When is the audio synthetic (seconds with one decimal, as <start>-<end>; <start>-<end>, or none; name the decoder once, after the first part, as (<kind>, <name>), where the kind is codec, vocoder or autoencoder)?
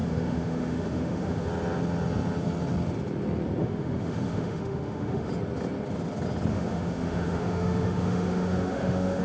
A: 0.0-1.5 (autoencoder, DAC-VAE); 3.6-5.3; 6.5-9.2